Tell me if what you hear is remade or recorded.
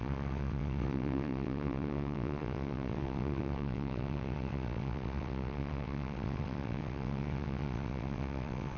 remade